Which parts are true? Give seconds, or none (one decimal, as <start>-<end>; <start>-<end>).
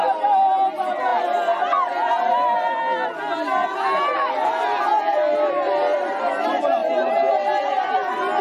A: 0.0-8.4